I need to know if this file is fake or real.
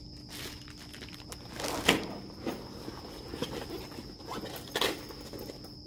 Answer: real